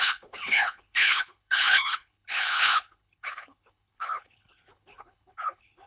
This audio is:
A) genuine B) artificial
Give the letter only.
B